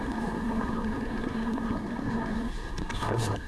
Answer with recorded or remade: remade